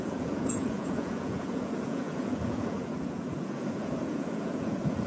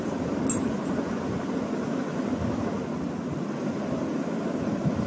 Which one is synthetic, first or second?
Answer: first